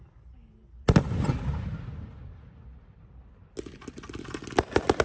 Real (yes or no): yes